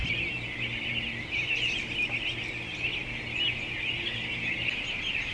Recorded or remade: recorded